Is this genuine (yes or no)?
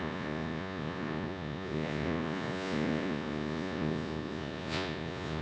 no